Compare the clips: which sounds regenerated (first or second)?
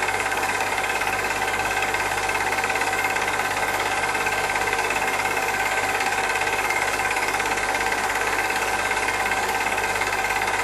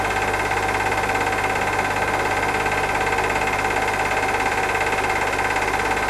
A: first